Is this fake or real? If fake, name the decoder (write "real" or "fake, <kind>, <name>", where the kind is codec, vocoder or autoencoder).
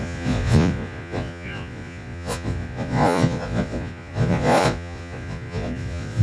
fake, vocoder, Vocos